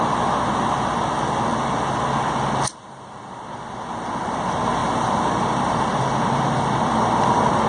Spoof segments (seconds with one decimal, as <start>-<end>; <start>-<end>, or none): none